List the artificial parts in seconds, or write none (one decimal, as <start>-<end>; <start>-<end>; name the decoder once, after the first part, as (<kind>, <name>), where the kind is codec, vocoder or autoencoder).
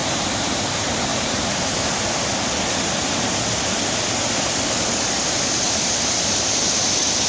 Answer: 0.0-2.2 (vocoder, BigVGAN v2)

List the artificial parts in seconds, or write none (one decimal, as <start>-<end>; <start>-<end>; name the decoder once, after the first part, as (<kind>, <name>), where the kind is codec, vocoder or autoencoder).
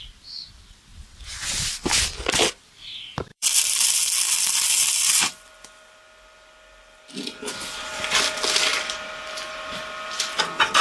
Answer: 3.3-3.9 (vocoder, BigVGAN v2); 4.7-5.5; 8.7-10.4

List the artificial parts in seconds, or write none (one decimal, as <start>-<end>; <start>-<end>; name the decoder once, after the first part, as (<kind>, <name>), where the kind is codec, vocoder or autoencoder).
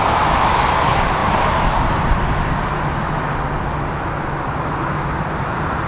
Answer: 1.2-2.0 (vocoder, BigVGAN v2)